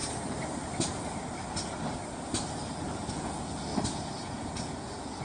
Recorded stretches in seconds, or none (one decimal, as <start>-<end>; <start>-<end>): 0.0-3.1; 3.7-4.2